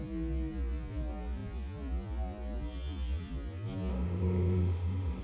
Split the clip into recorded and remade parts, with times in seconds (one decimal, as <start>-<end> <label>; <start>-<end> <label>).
0.0-3.9 recorded; 3.9-5.2 remade